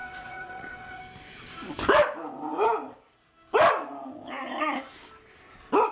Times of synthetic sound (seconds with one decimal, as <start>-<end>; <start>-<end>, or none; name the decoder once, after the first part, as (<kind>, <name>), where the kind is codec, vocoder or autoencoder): 0.0-1.0 (vocoder, Vocos)